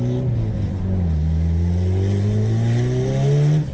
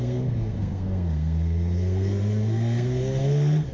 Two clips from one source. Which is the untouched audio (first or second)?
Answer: first